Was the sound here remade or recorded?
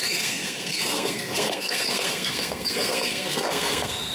remade